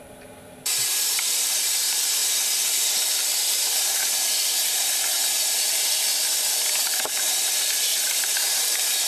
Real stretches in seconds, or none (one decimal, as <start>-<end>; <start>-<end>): 2.2-3.8; 6.1-7.6